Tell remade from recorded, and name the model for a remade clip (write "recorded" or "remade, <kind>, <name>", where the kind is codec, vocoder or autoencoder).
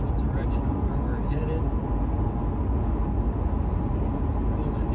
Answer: recorded